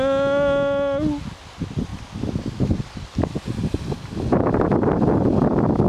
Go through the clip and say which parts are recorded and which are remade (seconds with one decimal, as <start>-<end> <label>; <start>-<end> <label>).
0.0-1.9 recorded; 1.9-4.1 remade; 4.1-5.9 recorded